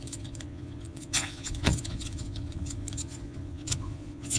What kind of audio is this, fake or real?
fake